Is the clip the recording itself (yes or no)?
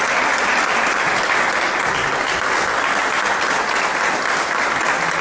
yes